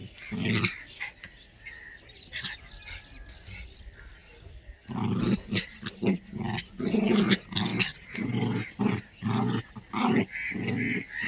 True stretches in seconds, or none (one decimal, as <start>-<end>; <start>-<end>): 0.0-11.3

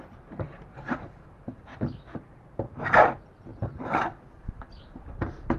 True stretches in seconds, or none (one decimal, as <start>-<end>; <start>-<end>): 1.7-2.3; 3.5-4.8

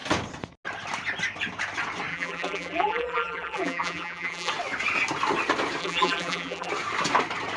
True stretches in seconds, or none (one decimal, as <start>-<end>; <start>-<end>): 0.0-2.1; 4.5-5.8; 6.7-7.6

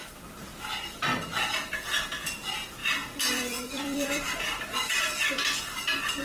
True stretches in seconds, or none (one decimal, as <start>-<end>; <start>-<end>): 0.0-2.8; 5.3-6.2

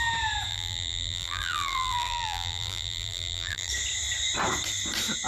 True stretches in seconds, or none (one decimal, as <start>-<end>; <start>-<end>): 0.0-0.5; 3.7-5.3

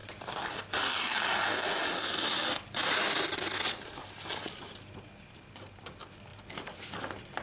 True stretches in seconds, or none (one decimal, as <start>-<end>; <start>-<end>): 0.0-7.4

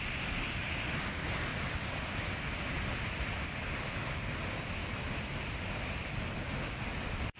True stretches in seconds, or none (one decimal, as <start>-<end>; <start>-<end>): 0.0-1.5; 3.2-4.8; 6.3-7.4